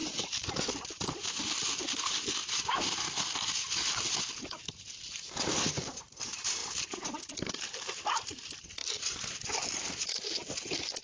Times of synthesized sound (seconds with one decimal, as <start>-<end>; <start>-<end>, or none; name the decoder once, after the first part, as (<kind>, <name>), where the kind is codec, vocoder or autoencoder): 0.0-2.4 (vocoder, BigVGAN v2); 4.4-11.0